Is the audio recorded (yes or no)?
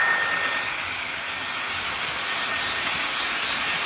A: yes